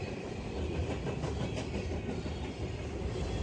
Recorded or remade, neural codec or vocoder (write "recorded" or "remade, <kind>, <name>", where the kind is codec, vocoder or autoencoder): recorded